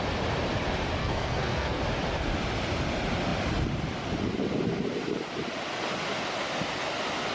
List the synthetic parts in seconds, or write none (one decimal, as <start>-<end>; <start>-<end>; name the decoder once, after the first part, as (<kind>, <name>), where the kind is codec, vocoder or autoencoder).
1.0-1.8 (codec, SNAC)